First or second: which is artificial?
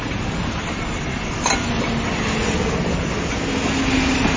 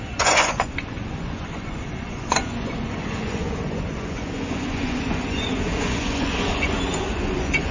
second